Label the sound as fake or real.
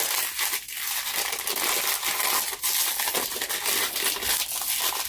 real